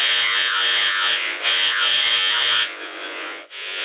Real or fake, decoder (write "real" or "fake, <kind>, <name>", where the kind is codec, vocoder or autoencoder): fake, vocoder, Vocos